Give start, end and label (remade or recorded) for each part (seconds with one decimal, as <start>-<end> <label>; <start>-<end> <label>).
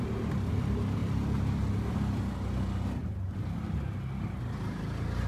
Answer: 0.0-5.3 recorded